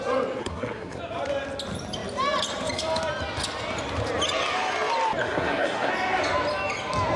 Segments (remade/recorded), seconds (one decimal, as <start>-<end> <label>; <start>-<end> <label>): 0.0-0.4 recorded; 0.4-1.0 remade; 1.0-5.2 recorded; 5.2-5.9 remade; 5.9-7.2 recorded